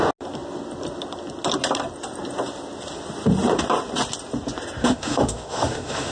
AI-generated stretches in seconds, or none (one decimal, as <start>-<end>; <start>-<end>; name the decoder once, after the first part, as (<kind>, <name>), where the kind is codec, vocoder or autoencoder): 4.8-6.1 (autoencoder, DAC-VAE)